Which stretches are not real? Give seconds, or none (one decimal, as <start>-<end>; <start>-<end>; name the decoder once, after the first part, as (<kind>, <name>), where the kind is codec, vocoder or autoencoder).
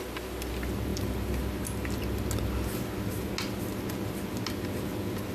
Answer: none